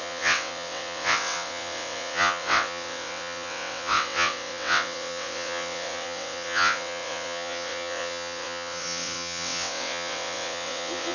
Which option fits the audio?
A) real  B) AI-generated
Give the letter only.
B